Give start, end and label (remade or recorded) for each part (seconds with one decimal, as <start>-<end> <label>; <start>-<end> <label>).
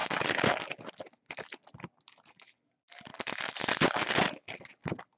0.0-5.2 recorded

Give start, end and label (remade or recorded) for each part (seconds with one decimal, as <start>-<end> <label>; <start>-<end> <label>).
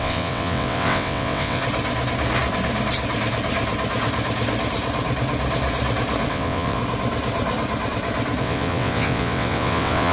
0.0-1.6 remade; 1.6-6.3 recorded; 6.3-6.8 remade; 6.8-8.4 recorded; 8.4-10.1 remade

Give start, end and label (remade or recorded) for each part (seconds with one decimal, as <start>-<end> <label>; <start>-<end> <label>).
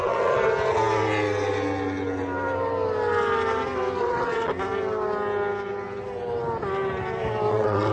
0.0-0.4 remade; 0.4-4.0 recorded; 4.0-4.5 remade; 4.5-7.5 recorded; 7.5-7.9 remade